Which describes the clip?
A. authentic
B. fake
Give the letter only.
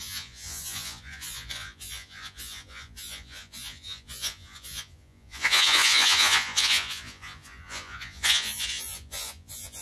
B